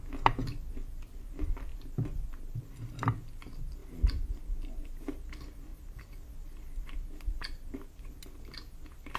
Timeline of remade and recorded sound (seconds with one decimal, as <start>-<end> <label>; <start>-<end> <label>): 0.0-9.2 recorded